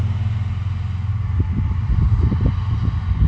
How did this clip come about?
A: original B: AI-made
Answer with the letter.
A